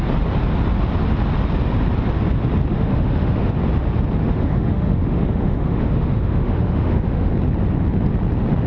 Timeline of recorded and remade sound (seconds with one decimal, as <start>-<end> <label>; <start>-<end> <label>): 0.0-2.7 recorded; 2.7-3.5 remade; 3.5-4.2 recorded; 4.2-7.3 remade; 7.3-8.7 recorded